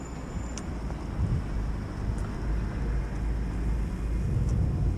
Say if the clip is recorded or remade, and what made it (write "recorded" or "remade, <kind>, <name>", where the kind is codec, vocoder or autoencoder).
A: recorded